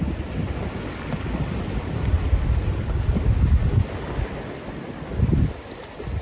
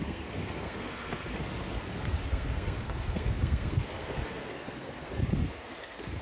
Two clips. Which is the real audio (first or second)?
first